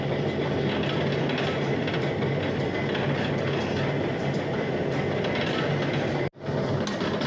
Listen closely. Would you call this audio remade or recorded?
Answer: recorded